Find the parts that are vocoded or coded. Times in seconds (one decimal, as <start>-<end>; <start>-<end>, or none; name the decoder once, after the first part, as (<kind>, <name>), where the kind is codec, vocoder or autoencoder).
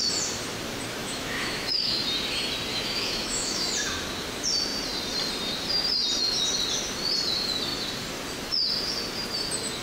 1.0-2.0 (autoencoder, DAC-VAE); 2.7-3.7